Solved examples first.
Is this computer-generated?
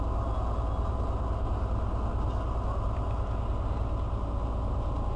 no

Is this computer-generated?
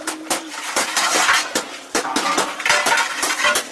no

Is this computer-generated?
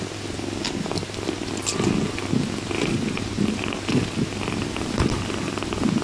no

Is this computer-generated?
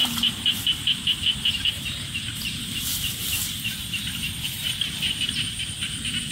yes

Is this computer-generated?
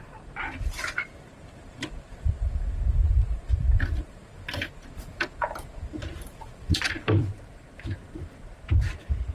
yes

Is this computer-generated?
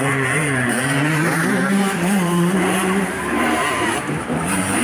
yes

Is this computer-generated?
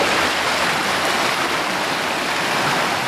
no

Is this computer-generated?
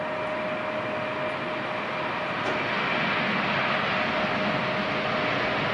no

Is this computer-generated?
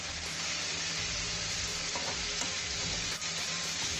yes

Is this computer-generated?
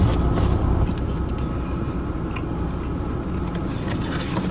no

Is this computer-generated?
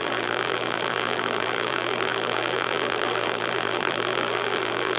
yes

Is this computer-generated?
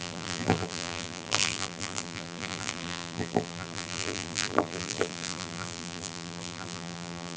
yes